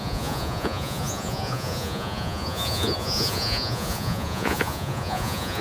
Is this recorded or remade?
remade